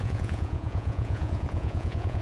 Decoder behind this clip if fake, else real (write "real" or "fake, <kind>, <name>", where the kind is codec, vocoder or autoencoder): fake, vocoder, Vocos